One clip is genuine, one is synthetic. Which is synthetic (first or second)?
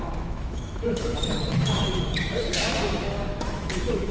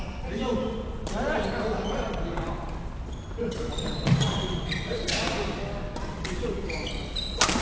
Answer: first